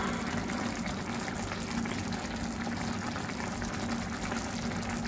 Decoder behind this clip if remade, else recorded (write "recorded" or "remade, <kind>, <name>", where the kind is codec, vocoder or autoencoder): recorded